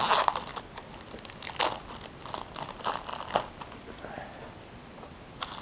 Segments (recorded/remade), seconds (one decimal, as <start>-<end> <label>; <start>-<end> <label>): 0.0-5.6 recorded